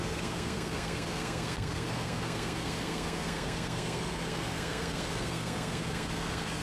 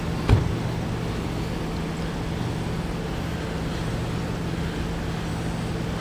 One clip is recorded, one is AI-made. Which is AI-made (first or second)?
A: first